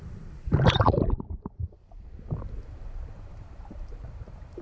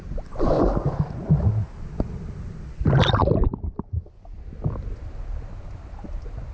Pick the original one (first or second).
second